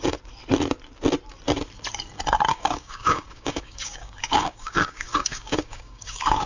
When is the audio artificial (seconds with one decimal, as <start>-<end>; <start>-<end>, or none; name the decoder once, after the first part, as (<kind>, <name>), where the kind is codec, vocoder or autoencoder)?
2.5-6.5 (codec, DAC)